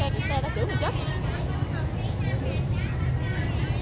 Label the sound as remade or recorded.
recorded